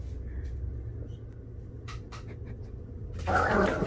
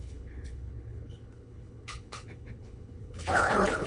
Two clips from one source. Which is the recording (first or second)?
first